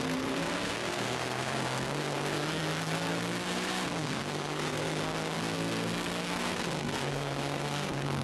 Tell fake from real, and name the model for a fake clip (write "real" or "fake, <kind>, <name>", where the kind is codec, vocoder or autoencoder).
fake, codec, SNAC